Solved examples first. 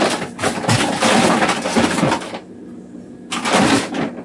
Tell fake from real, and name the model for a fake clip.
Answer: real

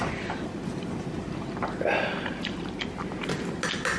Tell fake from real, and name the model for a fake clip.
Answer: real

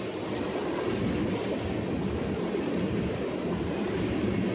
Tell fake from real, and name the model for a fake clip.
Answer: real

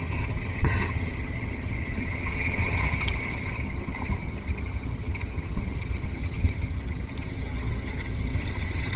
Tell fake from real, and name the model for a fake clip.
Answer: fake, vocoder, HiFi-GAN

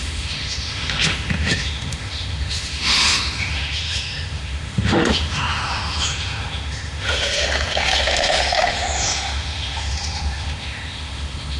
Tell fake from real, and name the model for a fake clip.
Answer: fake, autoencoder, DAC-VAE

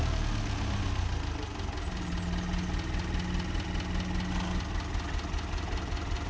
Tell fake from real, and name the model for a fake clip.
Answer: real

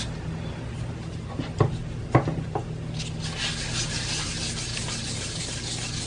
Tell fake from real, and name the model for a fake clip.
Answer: real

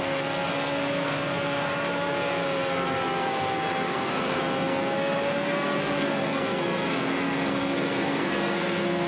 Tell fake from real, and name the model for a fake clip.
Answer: fake, codec, SNAC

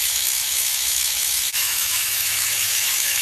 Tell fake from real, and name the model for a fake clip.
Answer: fake, autoencoder, DAC-VAE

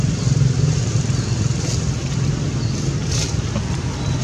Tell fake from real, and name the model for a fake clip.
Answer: real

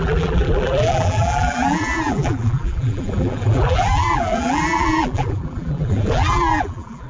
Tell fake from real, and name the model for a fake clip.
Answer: fake, vocoder, BigVGAN v2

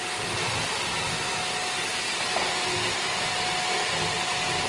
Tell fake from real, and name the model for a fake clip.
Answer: real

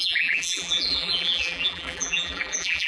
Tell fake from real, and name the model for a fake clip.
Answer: fake, vocoder, BigVGAN v2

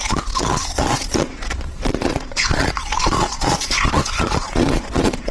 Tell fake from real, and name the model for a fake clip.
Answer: fake, vocoder, Vocos